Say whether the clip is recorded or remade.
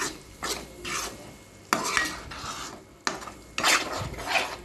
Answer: recorded